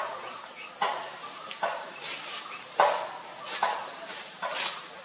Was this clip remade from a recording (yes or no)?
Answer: no